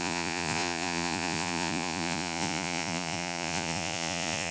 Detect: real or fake fake